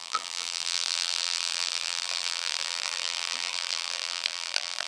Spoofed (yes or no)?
yes